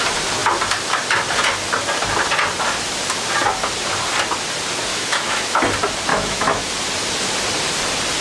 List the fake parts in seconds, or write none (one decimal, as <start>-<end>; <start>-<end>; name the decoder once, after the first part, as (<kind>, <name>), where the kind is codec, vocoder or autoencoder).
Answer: 4.9-5.6 (autoencoder, DAC-VAE); 6.1-6.7